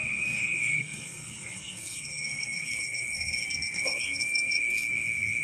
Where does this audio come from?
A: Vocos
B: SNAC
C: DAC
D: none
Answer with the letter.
B